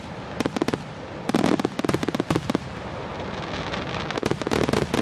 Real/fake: real